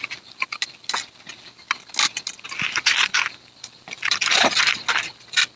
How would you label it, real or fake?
real